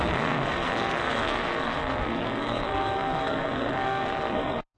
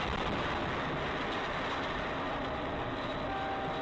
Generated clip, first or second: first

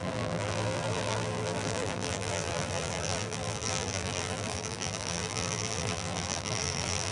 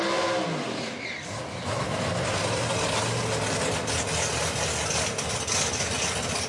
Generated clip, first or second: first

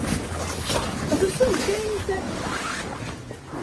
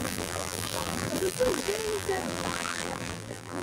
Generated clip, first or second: second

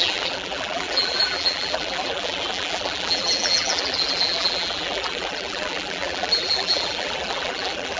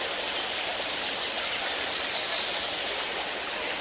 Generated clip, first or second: first